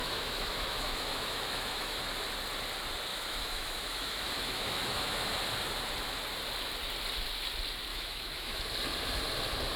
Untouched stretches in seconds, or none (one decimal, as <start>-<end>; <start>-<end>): 2.0-3.1; 5.4-7.9; 8.6-9.8